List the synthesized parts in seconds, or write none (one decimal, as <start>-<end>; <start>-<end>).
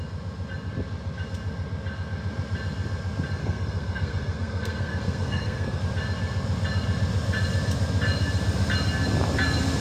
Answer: 3.4-5.8